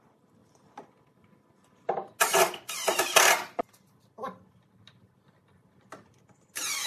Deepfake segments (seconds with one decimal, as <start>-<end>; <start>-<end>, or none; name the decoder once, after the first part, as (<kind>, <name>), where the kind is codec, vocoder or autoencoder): none